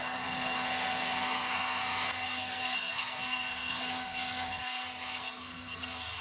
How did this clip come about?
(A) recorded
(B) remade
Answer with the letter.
B